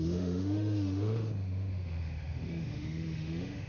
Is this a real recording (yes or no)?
no